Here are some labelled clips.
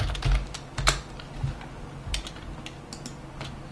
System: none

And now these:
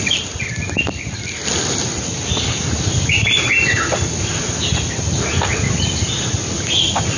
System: none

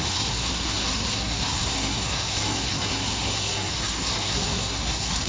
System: codec, SNAC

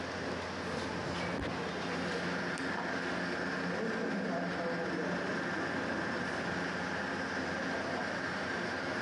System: none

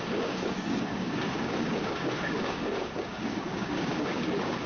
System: codec, DAC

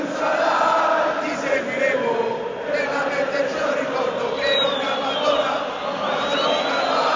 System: none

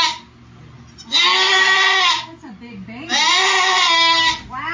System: none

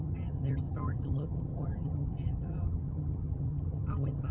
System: vocoder, HiFi-GAN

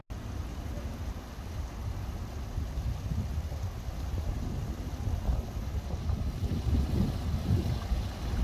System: none